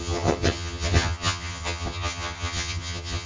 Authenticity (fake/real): fake